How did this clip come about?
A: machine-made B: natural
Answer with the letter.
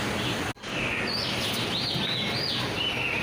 B